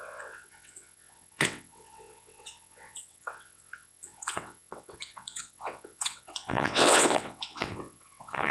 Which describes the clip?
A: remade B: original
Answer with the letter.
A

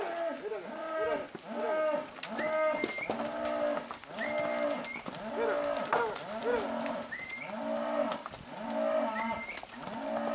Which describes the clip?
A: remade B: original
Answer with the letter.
B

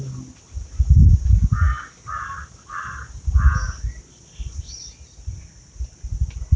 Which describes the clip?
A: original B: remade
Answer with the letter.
A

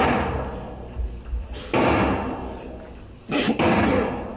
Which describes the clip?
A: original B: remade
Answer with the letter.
A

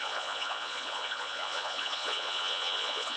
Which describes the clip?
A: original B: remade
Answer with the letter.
B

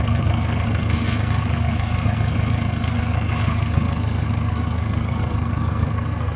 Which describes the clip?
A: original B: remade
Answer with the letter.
B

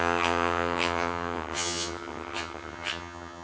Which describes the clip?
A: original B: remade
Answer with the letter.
B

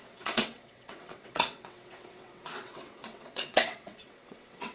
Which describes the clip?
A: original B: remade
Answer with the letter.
B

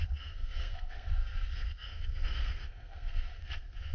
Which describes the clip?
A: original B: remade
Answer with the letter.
B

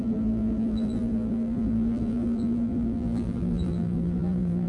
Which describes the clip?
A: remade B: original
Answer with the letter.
A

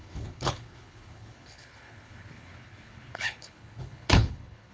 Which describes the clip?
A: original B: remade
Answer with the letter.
B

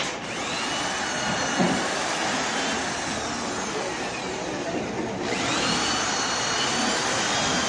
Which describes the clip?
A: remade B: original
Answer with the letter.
B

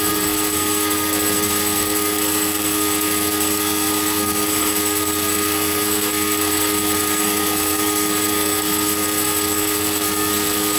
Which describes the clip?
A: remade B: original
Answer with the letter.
A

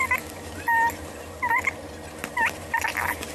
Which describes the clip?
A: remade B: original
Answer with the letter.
B